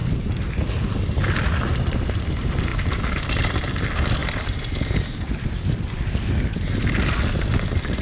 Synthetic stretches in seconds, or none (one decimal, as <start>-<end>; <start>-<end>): none